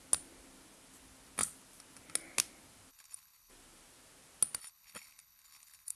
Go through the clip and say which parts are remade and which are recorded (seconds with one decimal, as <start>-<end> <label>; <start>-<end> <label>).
0.0-2.9 recorded; 2.9-3.5 remade; 3.5-4.6 recorded; 4.6-6.0 remade